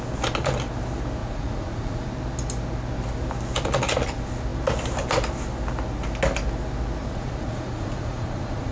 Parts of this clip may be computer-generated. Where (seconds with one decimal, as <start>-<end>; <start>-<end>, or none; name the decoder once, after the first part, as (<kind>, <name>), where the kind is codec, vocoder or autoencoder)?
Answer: 1.2-2.1 (vocoder, Vocos); 7.0-8.7